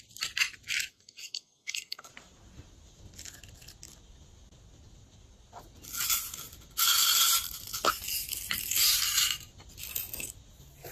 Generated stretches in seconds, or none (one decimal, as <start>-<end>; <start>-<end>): 0.9-2.1